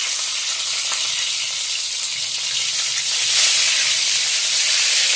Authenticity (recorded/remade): recorded